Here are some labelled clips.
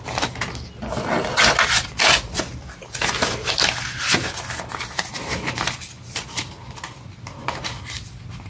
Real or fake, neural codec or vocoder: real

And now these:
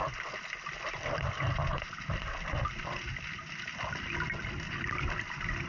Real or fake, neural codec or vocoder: real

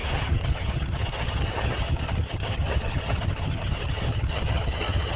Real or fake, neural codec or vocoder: fake, vocoder, HiFi-GAN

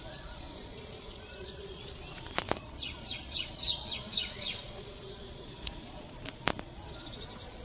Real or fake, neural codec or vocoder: fake, vocoder, Vocos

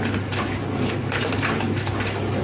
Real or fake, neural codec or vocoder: real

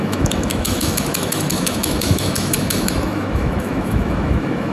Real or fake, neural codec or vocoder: fake, autoencoder, DAC-VAE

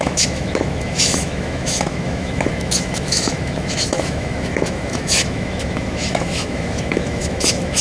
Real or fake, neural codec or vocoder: fake, autoencoder, DAC-VAE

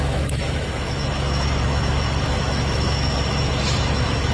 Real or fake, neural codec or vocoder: fake, autoencoder, DAC-VAE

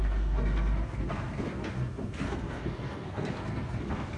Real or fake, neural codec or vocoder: fake, codec, SNAC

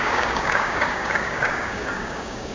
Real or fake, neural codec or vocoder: fake, codec, DAC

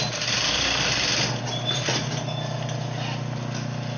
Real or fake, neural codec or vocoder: real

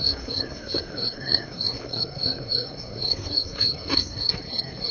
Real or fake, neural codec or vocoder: fake, codec, SNAC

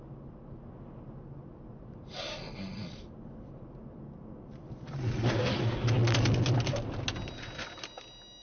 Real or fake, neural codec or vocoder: real